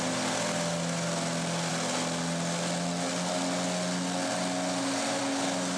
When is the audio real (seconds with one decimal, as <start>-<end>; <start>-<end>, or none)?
0.0-5.8